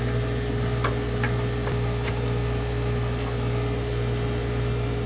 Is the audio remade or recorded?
recorded